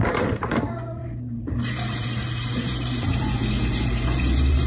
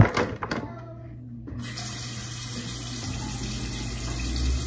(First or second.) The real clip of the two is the second